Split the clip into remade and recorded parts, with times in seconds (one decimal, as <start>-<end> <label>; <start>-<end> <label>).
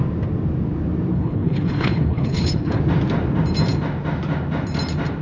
0.0-1.1 recorded; 1.1-2.8 remade; 2.8-5.2 recorded